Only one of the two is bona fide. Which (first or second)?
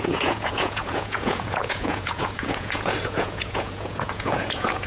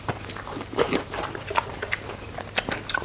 second